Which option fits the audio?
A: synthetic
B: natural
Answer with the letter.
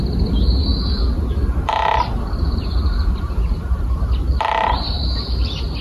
A